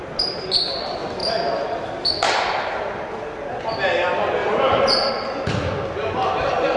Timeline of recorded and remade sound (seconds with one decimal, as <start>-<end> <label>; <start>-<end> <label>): 0.0-4.4 recorded; 4.4-5.1 remade; 5.1-6.8 recorded